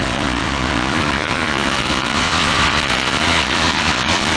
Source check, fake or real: fake